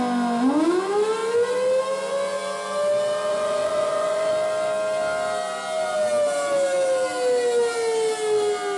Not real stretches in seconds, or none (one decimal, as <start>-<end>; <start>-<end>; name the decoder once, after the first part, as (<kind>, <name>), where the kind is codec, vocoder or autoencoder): 3.3-4.3 (vocoder, Vocos)